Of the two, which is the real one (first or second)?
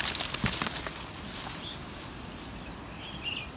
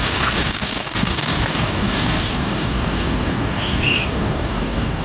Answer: first